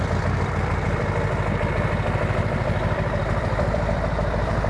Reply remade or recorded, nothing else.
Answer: remade